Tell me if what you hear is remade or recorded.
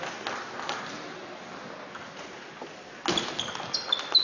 recorded